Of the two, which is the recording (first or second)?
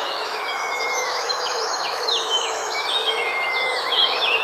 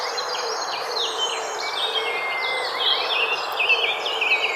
second